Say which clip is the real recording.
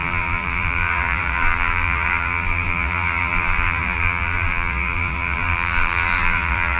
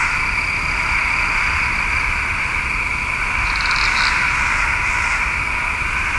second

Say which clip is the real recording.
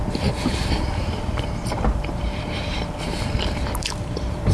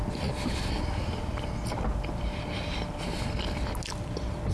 second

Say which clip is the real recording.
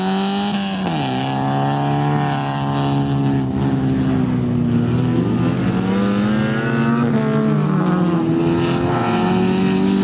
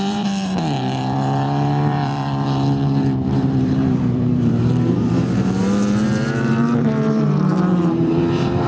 first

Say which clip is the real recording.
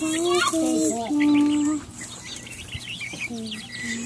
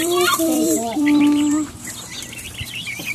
first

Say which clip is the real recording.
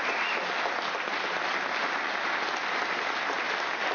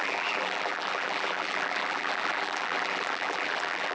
first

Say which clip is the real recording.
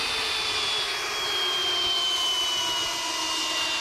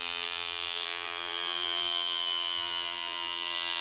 first